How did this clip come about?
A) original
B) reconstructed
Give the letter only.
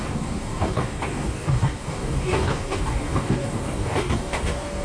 B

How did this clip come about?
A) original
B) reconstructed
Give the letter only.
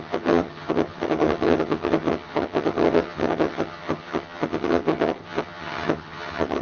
B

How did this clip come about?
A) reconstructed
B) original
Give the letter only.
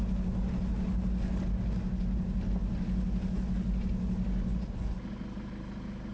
B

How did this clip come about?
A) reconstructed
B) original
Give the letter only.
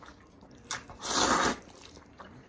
B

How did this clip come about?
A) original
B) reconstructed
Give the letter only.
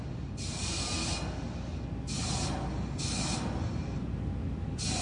A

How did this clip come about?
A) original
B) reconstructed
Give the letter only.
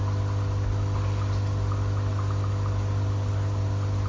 A